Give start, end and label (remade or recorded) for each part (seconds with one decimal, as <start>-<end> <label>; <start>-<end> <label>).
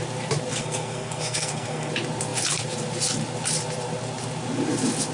0.0-0.5 recorded; 0.5-1.9 remade; 1.9-5.1 recorded